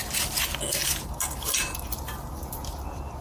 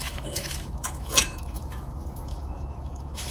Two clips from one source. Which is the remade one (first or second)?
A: second